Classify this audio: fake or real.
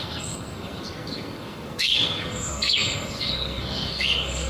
fake